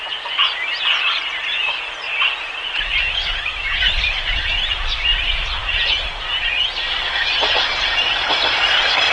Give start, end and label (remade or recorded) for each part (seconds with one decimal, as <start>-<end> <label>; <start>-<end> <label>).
0.0-9.1 recorded